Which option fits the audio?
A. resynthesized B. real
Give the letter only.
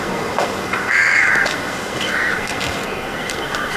A